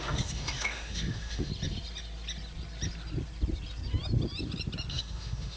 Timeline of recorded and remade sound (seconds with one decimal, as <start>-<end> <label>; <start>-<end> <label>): 0.0-1.5 remade; 1.5-4.9 recorded; 4.9-5.6 remade